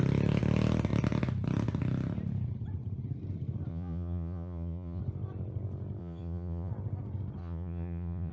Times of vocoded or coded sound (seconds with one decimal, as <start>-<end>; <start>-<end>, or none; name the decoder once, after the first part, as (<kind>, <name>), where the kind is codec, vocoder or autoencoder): 3.7-5.0 (vocoder, Vocos); 6.0-6.7; 7.4-8.3